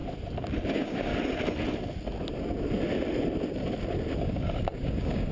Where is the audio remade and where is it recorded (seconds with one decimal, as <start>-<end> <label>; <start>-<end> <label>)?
0.0-0.7 recorded; 0.7-1.1 remade; 1.1-4.2 recorded; 4.2-5.3 remade